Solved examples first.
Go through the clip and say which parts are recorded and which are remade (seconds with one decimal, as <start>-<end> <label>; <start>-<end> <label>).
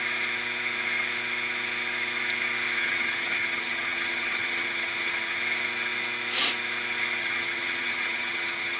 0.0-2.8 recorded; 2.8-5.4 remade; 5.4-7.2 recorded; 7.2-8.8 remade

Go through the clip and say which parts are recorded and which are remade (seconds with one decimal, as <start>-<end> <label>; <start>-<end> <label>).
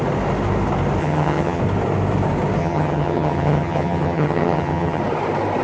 0.0-1.0 recorded; 1.0-1.6 remade; 1.6-2.6 recorded; 2.6-5.0 remade; 5.0-5.6 recorded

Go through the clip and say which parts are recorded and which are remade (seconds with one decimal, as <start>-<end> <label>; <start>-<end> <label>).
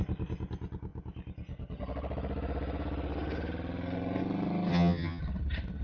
0.0-4.7 recorded; 4.7-5.2 remade; 5.2-5.8 recorded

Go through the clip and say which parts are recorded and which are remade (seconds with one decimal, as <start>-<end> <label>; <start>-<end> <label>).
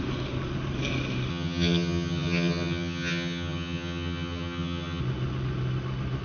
0.0-1.3 recorded; 1.3-5.0 remade; 5.0-6.2 recorded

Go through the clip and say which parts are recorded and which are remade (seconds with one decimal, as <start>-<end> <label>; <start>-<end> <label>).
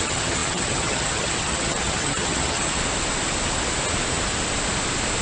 0.0-2.8 remade; 2.8-5.2 recorded